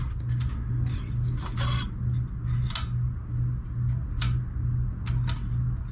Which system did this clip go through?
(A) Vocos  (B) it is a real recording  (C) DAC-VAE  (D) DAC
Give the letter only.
B